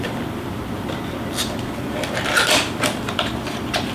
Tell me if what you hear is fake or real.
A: fake